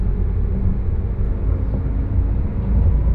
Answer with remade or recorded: recorded